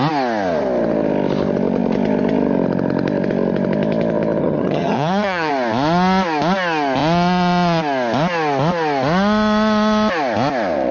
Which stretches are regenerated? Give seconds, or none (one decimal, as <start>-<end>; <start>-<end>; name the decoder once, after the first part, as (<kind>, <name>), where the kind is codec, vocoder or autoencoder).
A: 4.4-5.5 (vocoder, HiFi-GAN)